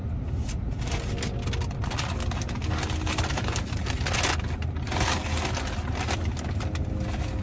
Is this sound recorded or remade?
recorded